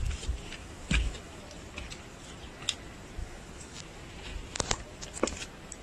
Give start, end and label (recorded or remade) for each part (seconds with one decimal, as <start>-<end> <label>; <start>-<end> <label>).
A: 0.0-0.6 recorded; 0.6-1.4 remade; 1.4-3.2 recorded; 3.2-3.8 remade; 3.8-5.8 recorded